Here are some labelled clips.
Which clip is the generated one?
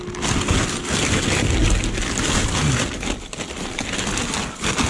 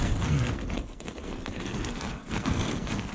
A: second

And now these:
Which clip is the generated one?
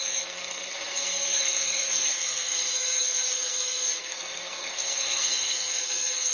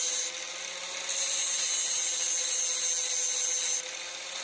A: first